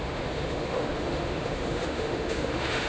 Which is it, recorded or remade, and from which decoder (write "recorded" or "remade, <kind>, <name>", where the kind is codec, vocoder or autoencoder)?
remade, autoencoder, DAC-VAE